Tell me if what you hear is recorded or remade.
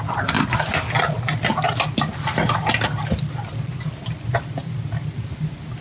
recorded